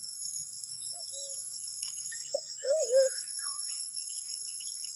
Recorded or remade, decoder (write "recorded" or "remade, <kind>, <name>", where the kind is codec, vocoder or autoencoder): remade, codec, SNAC